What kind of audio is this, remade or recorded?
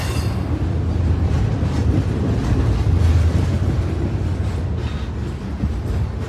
recorded